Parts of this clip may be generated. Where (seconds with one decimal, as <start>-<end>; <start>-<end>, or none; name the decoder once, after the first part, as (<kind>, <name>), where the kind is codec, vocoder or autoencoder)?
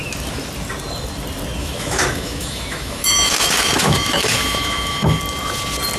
1.6-5.2 (autoencoder, DAC-VAE)